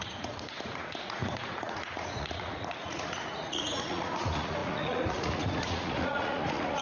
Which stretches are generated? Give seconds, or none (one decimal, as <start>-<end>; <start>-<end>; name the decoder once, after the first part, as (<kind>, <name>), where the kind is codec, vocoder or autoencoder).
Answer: 0.0-6.8 (vocoder, Vocos)